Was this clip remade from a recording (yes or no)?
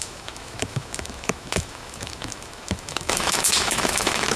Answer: yes